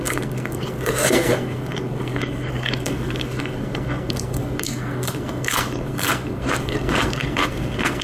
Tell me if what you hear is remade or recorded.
remade